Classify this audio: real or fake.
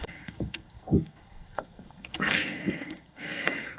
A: fake